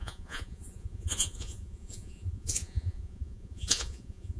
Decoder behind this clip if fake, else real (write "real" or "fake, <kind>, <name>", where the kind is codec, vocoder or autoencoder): fake, vocoder, Vocos